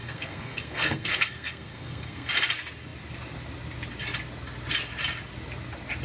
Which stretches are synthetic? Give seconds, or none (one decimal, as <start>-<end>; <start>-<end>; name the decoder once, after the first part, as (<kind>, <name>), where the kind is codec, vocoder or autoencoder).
0.0-2.3 (codec, SNAC)